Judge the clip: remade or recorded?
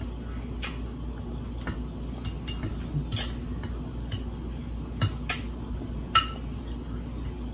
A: recorded